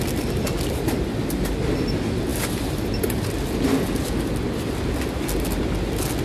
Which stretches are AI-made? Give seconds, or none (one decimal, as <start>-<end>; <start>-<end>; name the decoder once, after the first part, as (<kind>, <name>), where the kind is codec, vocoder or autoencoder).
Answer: none